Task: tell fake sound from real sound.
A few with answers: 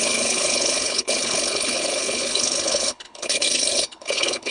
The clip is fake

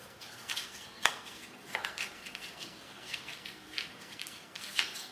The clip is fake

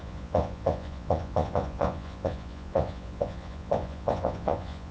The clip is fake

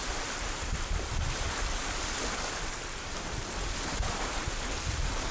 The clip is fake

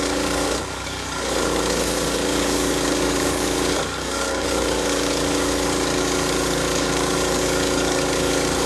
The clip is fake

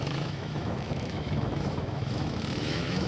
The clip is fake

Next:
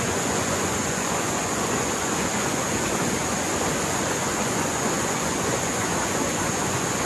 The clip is fake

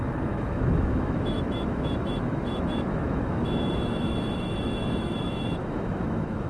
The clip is fake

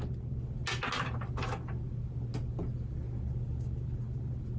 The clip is real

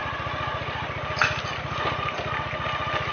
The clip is real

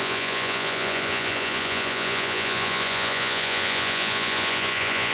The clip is fake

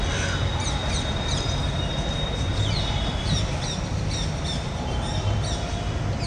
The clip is real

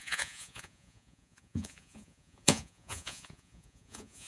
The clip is fake